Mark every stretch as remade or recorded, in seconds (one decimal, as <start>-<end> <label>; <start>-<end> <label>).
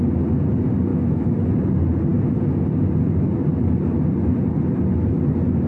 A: 0.0-0.9 recorded; 0.9-1.5 remade; 1.5-5.7 recorded